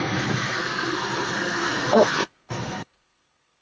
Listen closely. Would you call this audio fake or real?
fake